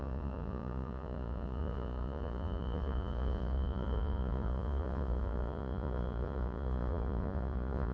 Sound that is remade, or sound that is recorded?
remade